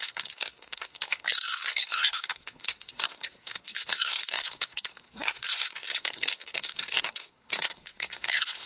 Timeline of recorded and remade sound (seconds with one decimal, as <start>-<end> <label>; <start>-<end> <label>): 0.0-8.7 remade